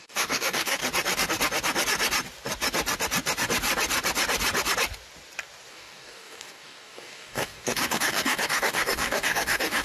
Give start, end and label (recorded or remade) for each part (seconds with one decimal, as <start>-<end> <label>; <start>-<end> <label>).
0.0-0.8 remade; 0.8-5.7 recorded; 5.7-9.8 remade